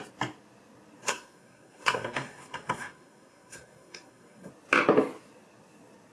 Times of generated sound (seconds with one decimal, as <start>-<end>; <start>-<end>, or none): 1.0-4.5